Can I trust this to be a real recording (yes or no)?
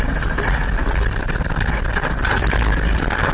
yes